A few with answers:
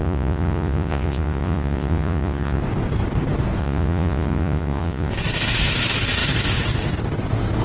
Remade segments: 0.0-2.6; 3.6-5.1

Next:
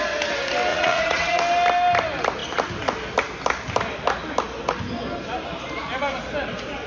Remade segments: 0.7-1.4

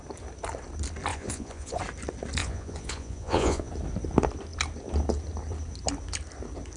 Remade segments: 1.1-1.8; 2.4-3.7

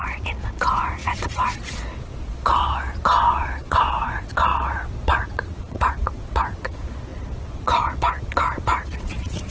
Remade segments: 0.0-9.5